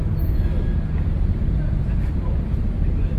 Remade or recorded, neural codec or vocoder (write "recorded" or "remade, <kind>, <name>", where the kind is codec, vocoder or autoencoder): recorded